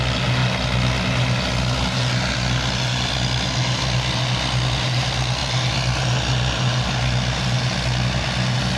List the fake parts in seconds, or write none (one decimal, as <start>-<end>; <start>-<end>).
none